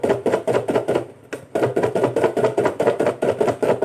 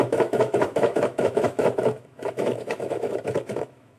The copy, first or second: second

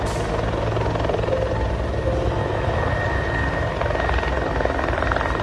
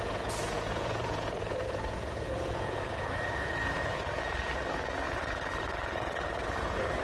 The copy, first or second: second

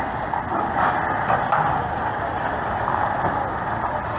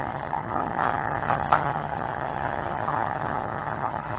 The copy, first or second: second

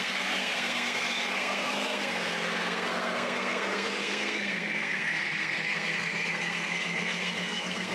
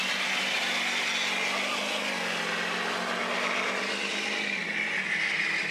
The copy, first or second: first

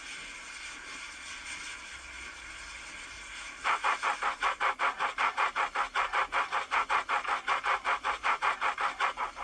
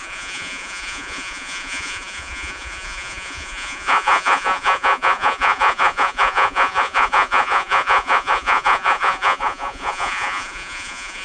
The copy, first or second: second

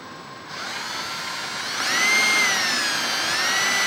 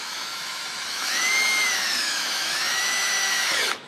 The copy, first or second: second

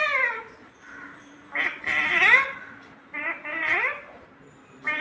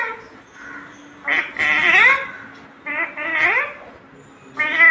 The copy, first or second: first